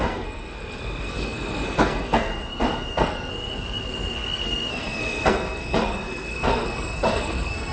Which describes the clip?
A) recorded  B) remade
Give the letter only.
B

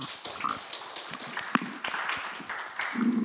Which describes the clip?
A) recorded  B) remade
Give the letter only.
A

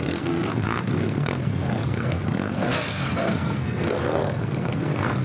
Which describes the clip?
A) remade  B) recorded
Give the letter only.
A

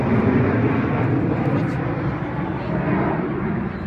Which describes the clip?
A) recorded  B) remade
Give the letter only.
A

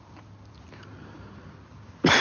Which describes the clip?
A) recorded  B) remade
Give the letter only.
A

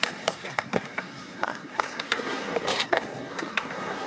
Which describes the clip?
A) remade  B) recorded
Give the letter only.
A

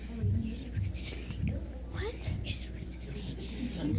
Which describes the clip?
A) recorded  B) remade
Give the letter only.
A